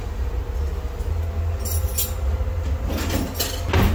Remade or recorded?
recorded